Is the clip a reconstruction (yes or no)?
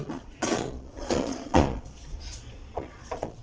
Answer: yes